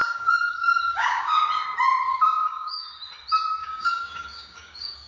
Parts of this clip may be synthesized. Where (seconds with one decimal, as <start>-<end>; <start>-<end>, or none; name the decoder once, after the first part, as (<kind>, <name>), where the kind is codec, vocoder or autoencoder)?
0.0-1.4 (codec, DAC); 2.1-3.0; 3.6-5.1

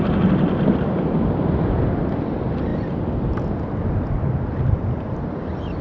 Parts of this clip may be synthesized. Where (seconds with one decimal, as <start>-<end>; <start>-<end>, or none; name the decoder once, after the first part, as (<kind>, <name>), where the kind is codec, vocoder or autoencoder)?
none

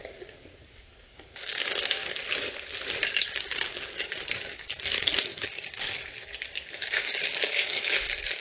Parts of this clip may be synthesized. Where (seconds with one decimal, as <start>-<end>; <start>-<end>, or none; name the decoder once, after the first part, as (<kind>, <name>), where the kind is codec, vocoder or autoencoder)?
0.0-2.0 (codec, DAC); 3.1-8.4

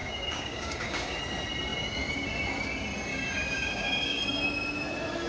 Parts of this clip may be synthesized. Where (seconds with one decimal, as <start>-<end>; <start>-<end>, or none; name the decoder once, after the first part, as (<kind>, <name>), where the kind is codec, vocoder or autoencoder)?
0.0-1.2 (codec, DAC); 3.1-4.2

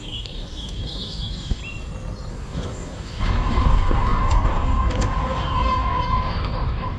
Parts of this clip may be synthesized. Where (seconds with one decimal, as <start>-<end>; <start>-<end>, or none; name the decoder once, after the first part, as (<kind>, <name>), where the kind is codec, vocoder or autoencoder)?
0.0-1.6 (codec, DAC); 2.3-7.0

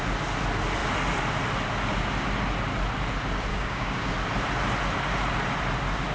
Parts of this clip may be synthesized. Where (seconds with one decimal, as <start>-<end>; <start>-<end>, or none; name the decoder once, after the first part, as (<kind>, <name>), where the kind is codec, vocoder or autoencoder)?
3.5-4.1 (codec, DAC)

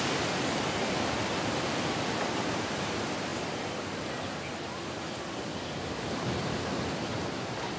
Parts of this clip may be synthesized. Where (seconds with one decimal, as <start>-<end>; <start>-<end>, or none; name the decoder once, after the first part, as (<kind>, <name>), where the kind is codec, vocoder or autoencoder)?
5.5-6.2 (codec, DAC)

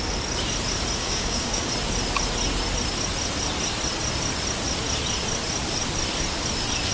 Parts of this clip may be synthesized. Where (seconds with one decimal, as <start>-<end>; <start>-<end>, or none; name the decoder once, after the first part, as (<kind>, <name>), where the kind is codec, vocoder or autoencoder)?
1.0-1.7 (codec, DAC)